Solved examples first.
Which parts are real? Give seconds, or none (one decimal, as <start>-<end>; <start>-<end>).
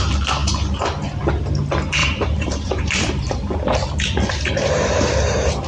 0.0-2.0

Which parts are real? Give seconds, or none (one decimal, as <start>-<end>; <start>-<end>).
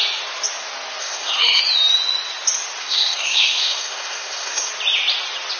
0.0-1.0; 1.6-2.8; 4.7-5.6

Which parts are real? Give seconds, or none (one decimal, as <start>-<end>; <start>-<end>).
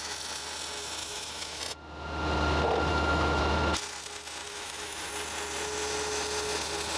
0.0-1.0; 1.6-2.9; 3.4-4.4; 5.1-7.0